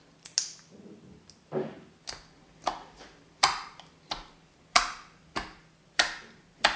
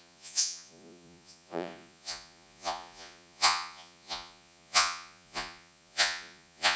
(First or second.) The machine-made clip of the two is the second